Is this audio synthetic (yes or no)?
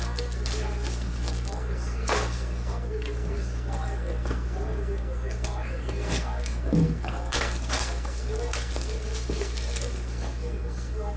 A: yes